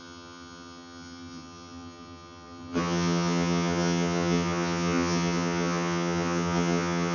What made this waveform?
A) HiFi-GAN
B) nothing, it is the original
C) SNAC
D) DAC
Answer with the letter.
A